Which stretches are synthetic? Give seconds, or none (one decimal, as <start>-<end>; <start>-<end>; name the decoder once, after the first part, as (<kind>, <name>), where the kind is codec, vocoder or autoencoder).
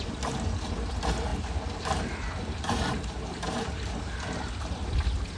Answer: 1.3-4.5 (vocoder, BigVGAN v2)